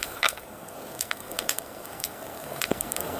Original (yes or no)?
no